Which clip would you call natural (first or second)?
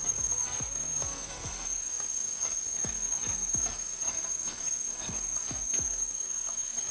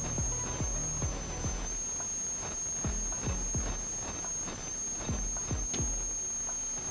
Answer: second